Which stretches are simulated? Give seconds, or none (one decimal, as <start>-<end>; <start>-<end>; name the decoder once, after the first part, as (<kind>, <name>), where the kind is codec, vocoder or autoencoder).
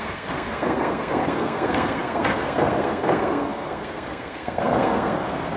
0.0-5.6 (codec, SNAC)